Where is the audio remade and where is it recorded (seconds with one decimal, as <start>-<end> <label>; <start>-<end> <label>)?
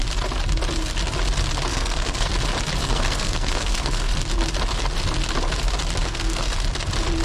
0.0-1.7 recorded; 1.7-2.3 remade; 2.3-2.8 recorded; 2.8-4.1 remade; 4.1-6.0 recorded; 6.0-6.5 remade; 6.5-7.2 recorded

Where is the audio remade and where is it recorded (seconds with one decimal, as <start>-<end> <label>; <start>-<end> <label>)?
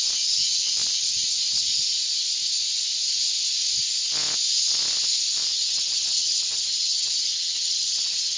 0.0-5.5 recorded; 5.5-8.4 remade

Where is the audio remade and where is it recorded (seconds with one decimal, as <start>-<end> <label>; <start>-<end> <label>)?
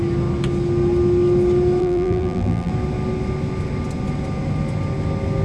0.0-1.8 recorded; 1.8-2.7 remade; 2.7-5.4 recorded